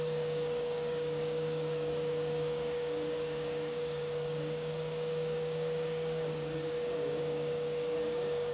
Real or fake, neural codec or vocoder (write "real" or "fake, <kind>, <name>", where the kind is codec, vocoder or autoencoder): fake, codec, DAC